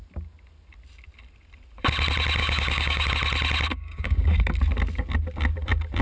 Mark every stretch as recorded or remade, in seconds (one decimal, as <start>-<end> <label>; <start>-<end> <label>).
0.0-2.4 recorded; 2.4-3.1 remade; 3.1-3.7 recorded; 3.7-4.6 remade; 4.6-6.0 recorded